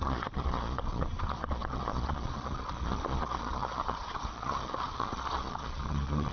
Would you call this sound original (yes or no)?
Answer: no